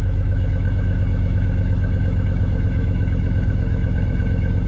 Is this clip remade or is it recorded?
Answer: remade